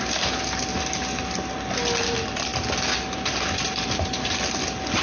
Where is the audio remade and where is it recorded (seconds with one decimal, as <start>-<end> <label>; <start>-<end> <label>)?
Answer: 0.0-5.0 recorded

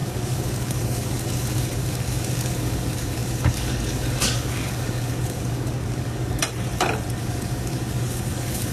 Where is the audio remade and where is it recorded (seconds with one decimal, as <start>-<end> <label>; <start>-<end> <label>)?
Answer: 0.0-6.4 remade; 6.4-7.2 recorded; 7.2-8.7 remade

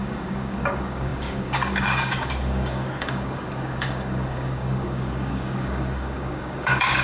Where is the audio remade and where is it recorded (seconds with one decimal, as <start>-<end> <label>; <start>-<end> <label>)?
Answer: 0.0-7.0 remade

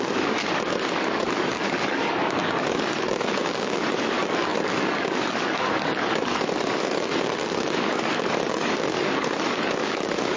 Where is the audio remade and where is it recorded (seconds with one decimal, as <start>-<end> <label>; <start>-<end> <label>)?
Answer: 0.0-10.4 remade

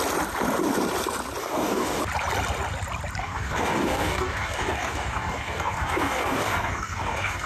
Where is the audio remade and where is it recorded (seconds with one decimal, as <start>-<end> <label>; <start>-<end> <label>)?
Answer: 0.0-1.4 recorded; 1.4-2.0 remade; 2.0-3.2 recorded; 3.2-7.5 remade